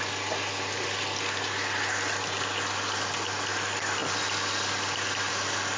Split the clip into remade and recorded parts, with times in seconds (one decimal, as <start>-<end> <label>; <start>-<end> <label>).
0.0-5.8 recorded